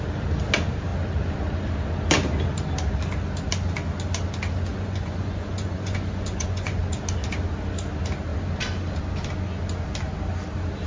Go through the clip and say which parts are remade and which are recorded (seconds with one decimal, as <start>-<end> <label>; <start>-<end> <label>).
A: 0.0-4.7 recorded; 4.7-6.8 remade; 6.8-10.9 recorded